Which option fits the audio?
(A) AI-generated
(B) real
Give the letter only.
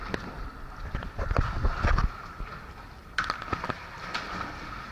B